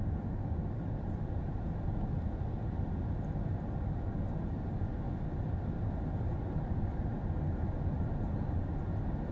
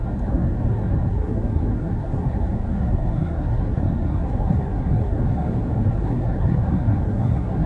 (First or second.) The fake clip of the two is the second